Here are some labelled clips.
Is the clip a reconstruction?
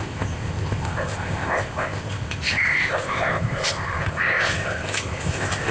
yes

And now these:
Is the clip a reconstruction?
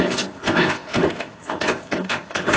yes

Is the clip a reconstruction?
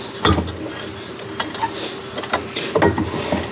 no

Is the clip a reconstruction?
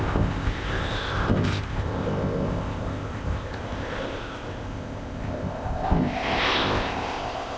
yes